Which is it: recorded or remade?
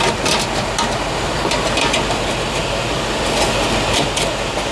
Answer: recorded